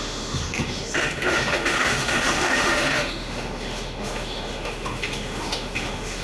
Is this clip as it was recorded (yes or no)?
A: no